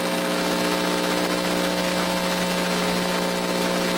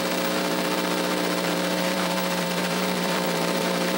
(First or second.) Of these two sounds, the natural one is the first